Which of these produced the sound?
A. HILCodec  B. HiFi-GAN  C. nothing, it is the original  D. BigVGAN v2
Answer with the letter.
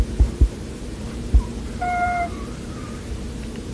D